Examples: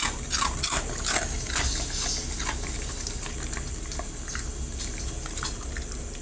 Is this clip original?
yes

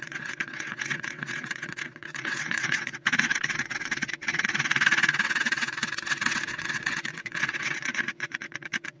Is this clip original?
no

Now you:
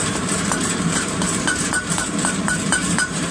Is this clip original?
no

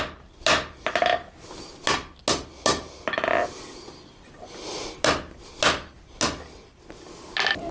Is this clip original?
yes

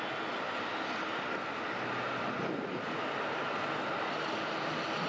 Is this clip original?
yes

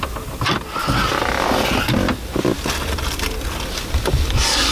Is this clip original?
yes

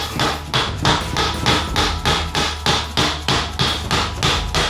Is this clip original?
yes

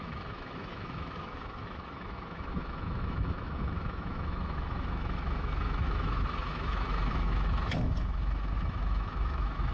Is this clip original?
no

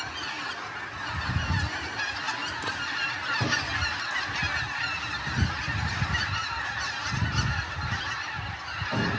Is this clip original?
yes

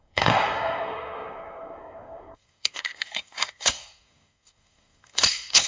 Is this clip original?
no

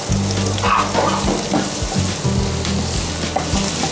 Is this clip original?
yes